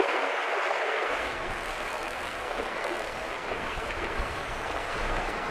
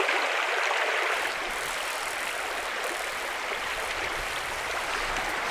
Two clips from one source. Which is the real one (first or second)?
second